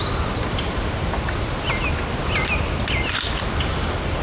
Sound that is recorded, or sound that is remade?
recorded